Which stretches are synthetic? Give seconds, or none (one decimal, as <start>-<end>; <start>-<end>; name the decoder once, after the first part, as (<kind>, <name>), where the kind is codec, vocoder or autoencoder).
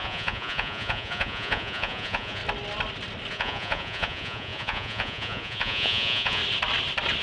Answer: 0.0-2.4 (vocoder, Vocos); 3.3-6.4